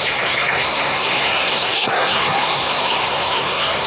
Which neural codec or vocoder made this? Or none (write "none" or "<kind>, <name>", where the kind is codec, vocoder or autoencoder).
codec, SNAC